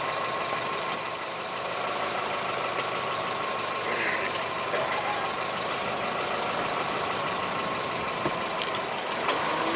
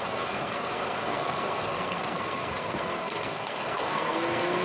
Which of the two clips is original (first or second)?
first